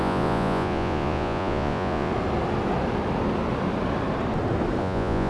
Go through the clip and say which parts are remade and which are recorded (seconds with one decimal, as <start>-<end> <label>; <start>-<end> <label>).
0.0-2.1 remade; 2.1-4.8 recorded; 4.8-5.3 remade